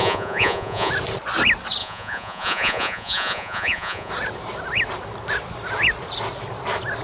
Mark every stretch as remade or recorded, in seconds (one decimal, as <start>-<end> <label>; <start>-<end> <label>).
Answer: 0.0-0.9 remade; 0.9-1.8 recorded; 1.8-4.1 remade; 4.1-7.0 recorded